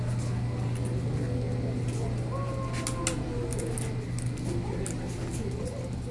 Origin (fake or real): real